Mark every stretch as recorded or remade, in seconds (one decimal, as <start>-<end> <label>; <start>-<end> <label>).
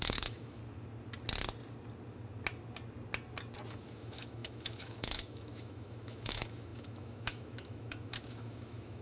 0.0-0.6 remade; 0.6-3.7 recorded; 3.7-9.0 remade